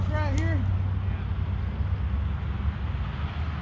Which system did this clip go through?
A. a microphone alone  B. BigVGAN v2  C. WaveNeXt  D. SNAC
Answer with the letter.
A